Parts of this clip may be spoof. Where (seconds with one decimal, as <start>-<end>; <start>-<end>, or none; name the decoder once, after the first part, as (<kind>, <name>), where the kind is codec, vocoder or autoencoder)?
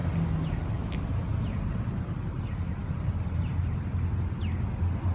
2.8-3.6 (vocoder, BigVGAN v2)